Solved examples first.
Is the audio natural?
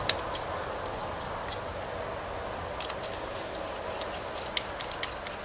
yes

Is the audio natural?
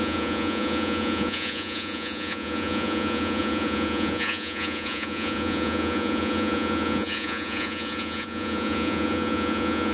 no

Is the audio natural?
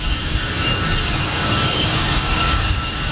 no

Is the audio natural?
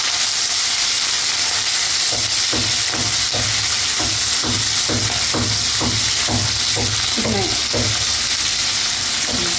yes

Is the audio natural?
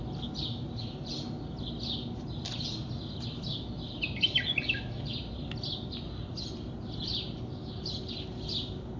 yes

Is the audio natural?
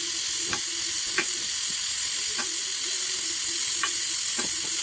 yes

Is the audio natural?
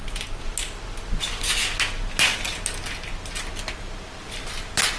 yes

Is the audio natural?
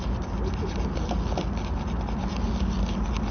yes